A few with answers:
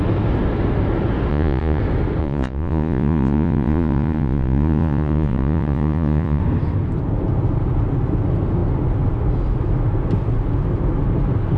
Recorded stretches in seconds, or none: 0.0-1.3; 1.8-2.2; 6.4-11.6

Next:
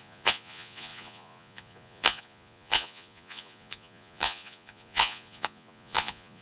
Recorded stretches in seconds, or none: none

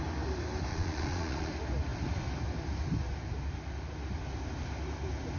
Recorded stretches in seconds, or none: 0.0-0.7; 1.5-5.4

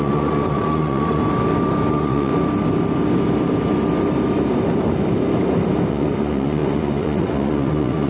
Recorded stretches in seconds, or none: 1.2-1.9; 2.3-5.9

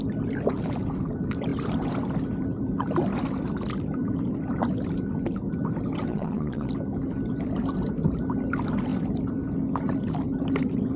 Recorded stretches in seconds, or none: 0.0-6.1; 6.7-11.0